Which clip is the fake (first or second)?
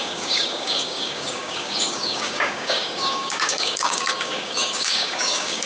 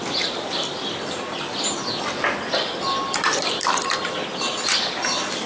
first